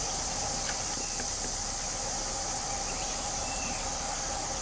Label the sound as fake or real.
real